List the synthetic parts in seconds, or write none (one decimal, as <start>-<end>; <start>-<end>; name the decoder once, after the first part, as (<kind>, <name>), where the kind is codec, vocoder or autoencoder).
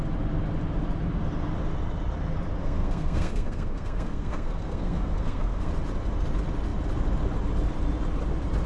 2.6-5.7 (codec, SNAC)